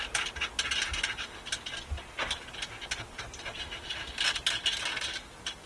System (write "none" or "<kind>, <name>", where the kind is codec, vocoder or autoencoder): none